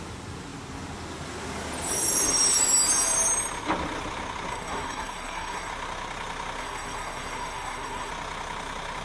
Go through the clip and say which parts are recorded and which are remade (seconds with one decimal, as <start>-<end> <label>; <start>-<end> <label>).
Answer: 0.0-4.5 recorded; 4.5-5.7 remade; 5.7-6.6 recorded; 6.6-8.1 remade; 8.1-9.0 recorded